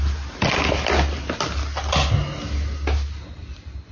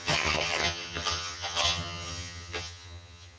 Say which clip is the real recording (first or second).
first